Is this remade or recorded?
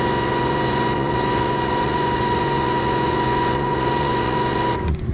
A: remade